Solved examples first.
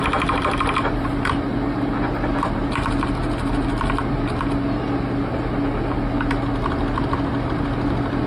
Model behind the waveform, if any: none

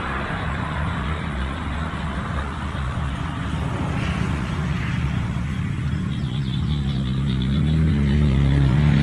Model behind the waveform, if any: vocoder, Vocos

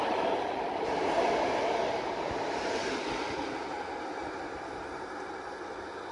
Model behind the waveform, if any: none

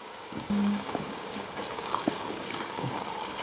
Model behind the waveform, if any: codec, DAC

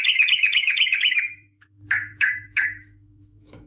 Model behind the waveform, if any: autoencoder, DAC-VAE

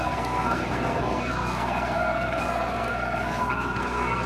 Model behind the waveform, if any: codec, SNAC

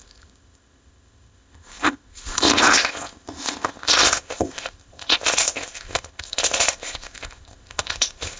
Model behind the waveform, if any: codec, ZipCodec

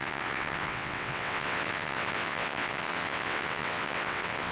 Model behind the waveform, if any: vocoder, WaveNeXt